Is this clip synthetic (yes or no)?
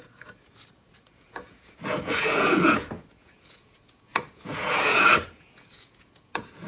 yes